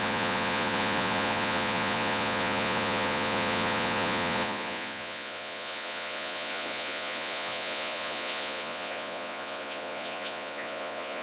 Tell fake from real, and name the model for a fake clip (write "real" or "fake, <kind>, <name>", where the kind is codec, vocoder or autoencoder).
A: fake, vocoder, Vocos